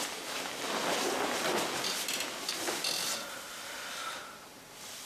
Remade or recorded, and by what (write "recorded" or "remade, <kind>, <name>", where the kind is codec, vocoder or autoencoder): recorded